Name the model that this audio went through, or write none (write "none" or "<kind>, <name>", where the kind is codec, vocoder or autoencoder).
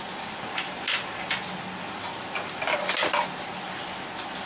none